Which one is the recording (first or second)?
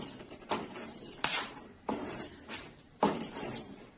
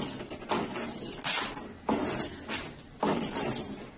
second